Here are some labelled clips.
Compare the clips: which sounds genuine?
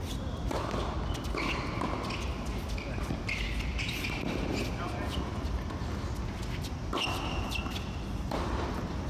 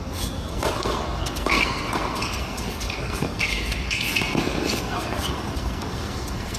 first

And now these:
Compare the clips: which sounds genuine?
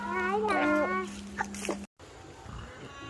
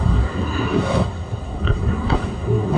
first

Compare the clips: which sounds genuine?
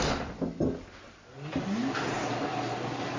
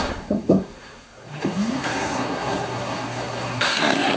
first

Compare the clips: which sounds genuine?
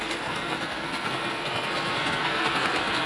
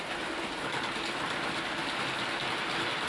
second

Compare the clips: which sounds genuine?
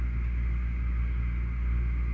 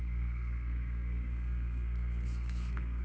first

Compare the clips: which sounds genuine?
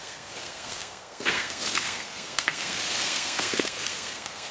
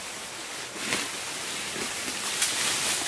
second